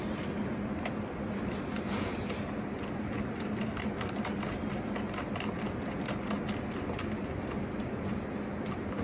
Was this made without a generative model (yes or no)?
yes